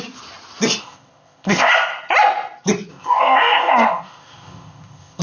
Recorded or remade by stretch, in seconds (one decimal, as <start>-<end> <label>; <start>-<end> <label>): 0.0-0.8 recorded; 0.8-1.7 remade; 1.7-2.9 recorded; 2.9-5.2 remade